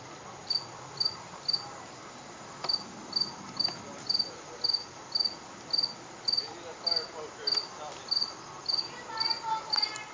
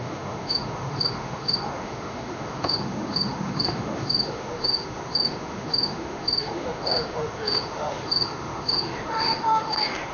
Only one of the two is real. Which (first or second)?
first